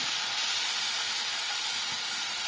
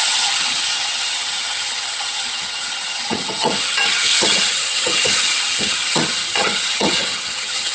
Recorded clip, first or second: first